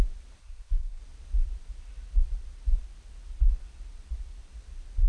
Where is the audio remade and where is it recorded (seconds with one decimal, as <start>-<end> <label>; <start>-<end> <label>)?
0.0-0.4 recorded; 0.4-1.0 remade; 1.0-5.1 recorded